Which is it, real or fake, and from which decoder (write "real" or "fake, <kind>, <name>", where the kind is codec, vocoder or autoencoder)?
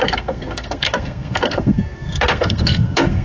fake, codec, SNAC